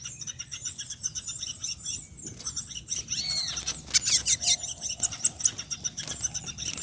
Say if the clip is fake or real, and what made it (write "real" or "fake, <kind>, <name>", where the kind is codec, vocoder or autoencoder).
real